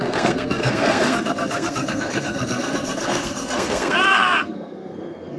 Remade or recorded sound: remade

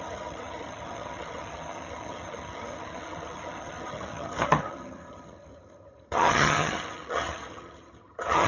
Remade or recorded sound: remade